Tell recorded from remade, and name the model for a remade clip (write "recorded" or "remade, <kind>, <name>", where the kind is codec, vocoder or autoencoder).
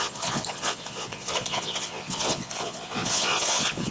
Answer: remade, vocoder, Vocos